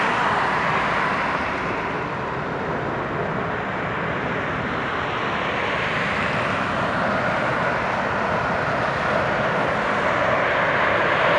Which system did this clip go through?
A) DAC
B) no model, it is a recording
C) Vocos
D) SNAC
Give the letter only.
B